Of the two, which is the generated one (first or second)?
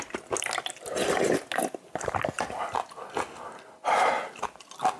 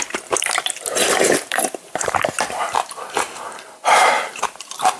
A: second